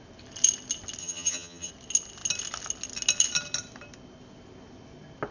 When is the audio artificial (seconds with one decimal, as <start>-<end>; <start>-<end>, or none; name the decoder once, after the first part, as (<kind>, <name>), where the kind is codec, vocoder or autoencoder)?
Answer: 1.0-1.7 (vocoder, HiFi-GAN)